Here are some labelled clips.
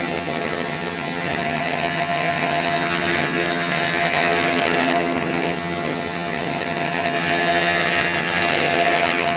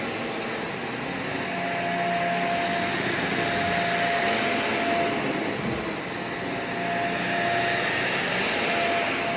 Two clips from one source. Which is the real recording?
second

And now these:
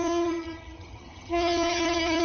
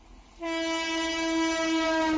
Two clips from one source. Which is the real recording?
second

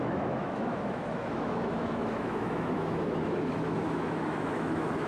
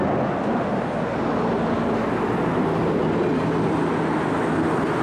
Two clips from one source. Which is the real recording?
second